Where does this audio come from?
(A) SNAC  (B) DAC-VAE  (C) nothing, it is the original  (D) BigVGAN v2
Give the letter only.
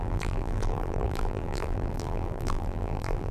D